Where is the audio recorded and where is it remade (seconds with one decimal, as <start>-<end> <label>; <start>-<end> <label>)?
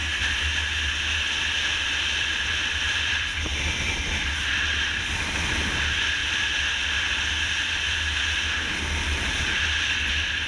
0.0-1.7 recorded; 1.7-3.5 remade; 3.5-4.5 recorded; 4.5-6.2 remade; 6.2-10.5 recorded